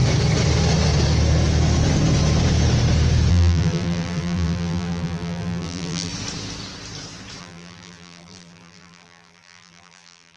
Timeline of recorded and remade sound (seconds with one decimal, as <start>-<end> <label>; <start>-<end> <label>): 0.0-3.3 recorded; 3.3-6.1 remade; 6.1-7.4 recorded; 7.4-10.4 remade

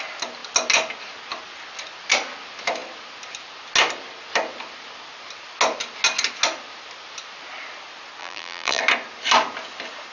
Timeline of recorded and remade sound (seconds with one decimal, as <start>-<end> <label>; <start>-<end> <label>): 0.0-8.2 recorded; 8.2-8.8 remade; 8.8-10.1 recorded

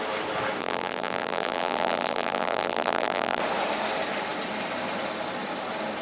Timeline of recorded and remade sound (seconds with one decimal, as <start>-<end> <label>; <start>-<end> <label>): 0.0-0.6 recorded; 0.6-3.4 remade; 3.4-6.0 recorded

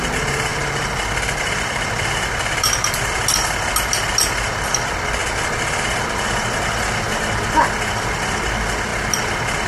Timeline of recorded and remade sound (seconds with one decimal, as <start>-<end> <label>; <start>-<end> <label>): 0.0-5.2 recorded; 5.2-6.0 remade; 6.0-9.7 recorded

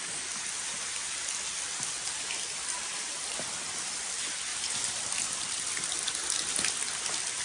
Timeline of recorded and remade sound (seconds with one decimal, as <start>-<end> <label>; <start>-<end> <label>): 0.0-2.9 recorded; 2.9-4.0 remade; 4.0-4.5 recorded; 4.5-7.4 remade